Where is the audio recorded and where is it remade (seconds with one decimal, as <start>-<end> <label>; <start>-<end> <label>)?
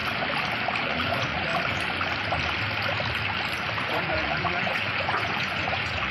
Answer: 0.0-0.8 recorded; 0.8-1.5 remade; 1.5-3.8 recorded; 3.8-6.1 remade